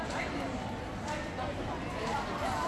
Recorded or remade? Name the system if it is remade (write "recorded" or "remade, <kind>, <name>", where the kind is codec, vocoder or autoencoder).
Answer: recorded